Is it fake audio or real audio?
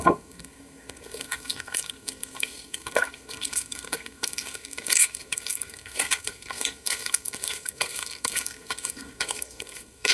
fake